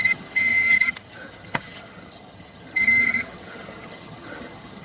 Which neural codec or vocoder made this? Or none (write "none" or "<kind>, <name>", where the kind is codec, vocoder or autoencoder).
vocoder, HiFi-GAN